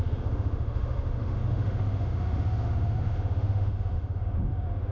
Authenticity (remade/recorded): remade